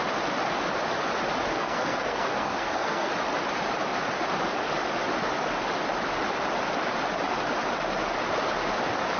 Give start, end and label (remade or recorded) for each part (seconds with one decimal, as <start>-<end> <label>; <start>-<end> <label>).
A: 0.0-1.5 recorded; 1.5-3.1 remade; 3.1-9.2 recorded